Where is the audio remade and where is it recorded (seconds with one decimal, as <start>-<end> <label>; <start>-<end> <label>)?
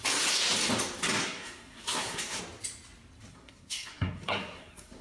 0.0-1.2 recorded; 1.2-2.4 remade; 2.4-3.3 recorded; 3.3-5.0 remade